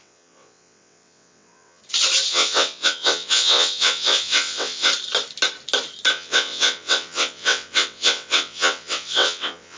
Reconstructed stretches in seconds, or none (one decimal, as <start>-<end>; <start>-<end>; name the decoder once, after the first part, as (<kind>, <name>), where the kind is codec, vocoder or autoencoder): 0.0-1.8 (vocoder, WaveNeXt); 2.3-4.9; 6.1-9.8